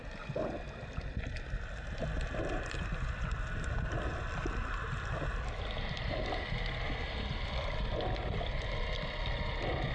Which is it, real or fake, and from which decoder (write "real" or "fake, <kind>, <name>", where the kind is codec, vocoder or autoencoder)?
real